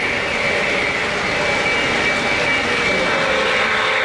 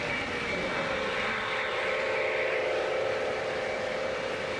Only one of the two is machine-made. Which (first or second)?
second